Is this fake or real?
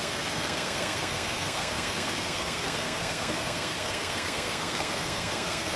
fake